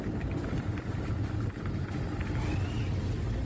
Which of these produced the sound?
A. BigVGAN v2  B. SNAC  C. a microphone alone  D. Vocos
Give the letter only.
C